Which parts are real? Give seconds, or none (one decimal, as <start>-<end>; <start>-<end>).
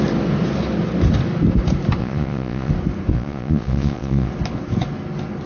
0.0-2.0; 2.7-3.1; 4.3-5.5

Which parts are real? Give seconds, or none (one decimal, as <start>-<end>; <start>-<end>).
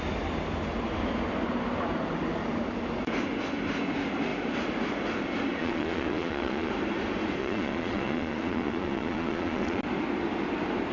0.0-5.6; 6.7-7.4; 9.8-10.9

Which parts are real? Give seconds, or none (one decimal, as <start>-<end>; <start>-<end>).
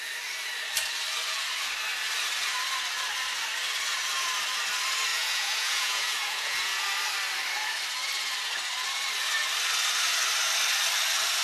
0.0-5.1; 6.8-11.4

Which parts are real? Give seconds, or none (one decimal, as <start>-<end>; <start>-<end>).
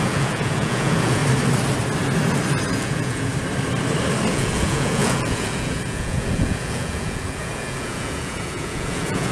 1.2-2.7; 3.3-4.3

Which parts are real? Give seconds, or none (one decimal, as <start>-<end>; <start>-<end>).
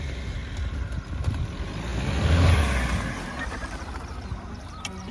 0.0-5.1